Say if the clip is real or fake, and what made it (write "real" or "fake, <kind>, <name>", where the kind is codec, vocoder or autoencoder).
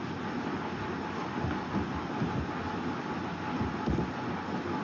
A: real